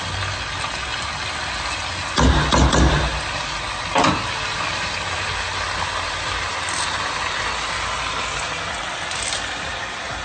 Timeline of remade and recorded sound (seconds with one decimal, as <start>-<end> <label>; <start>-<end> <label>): 0.0-10.2 recorded